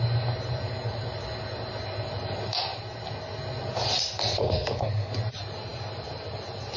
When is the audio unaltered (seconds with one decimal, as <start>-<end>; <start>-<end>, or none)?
0.0-4.3; 5.1-6.8